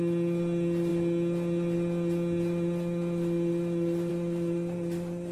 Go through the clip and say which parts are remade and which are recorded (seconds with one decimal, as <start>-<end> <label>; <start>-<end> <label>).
0.0-5.3 recorded